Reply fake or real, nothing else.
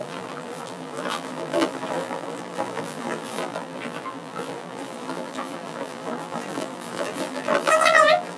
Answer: fake